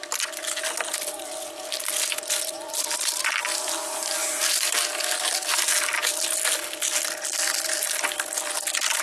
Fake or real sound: real